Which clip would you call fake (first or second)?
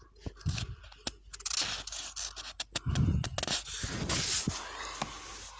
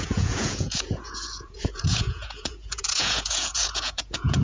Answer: second